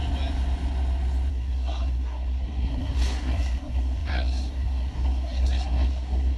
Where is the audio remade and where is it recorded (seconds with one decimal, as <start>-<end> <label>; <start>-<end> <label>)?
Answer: 0.0-1.3 recorded; 1.3-6.4 remade